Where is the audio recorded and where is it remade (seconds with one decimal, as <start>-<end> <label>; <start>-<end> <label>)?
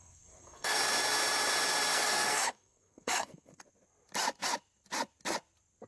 0.0-0.8 remade; 0.8-1.9 recorded; 1.9-3.6 remade; 3.6-5.9 recorded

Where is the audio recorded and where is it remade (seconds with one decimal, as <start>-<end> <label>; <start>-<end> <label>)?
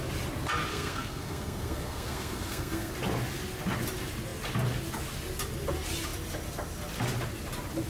0.0-0.7 recorded; 0.7-2.9 remade; 2.9-7.9 recorded